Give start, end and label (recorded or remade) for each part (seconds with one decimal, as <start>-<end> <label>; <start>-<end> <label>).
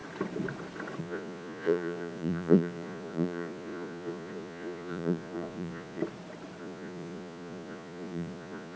0.0-1.0 recorded; 1.0-6.0 remade; 6.0-6.6 recorded; 6.6-8.8 remade